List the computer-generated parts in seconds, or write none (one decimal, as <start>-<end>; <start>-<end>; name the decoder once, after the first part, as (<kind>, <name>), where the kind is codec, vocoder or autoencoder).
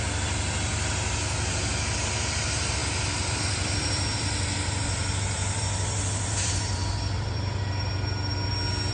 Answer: 2.8-7.6 (vocoder, BigVGAN v2)